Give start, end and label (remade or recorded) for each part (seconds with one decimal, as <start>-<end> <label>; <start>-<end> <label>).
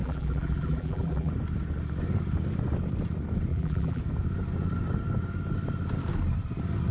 0.0-1.3 remade; 1.3-3.5 recorded; 3.5-4.0 remade; 4.0-6.9 recorded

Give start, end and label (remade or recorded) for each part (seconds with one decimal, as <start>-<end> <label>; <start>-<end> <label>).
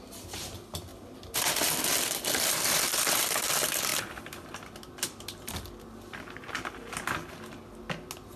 0.0-8.4 recorded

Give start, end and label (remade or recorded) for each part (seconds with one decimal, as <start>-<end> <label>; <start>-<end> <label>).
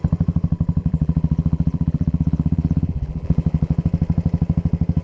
0.0-0.8 recorded; 0.8-3.8 remade; 3.8-5.0 recorded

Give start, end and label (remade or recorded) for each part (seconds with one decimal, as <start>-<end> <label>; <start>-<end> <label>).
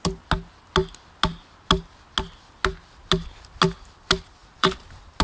0.0-4.4 recorded; 4.4-5.2 remade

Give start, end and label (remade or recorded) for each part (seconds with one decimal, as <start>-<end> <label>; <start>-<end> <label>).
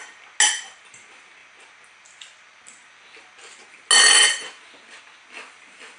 0.0-6.0 recorded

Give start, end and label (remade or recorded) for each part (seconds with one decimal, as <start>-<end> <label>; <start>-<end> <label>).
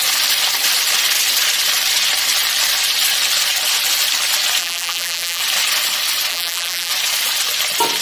0.0-4.6 recorded; 4.6-5.4 remade; 5.4-6.3 recorded; 6.3-6.9 remade; 6.9-8.0 recorded